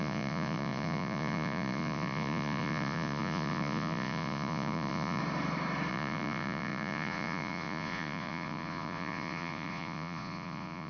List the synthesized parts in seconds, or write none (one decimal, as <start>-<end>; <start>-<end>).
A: 0.0-5.2; 5.9-10.9